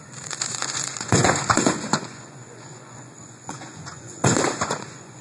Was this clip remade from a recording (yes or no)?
yes